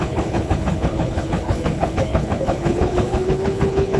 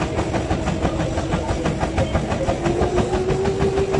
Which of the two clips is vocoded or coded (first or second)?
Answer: first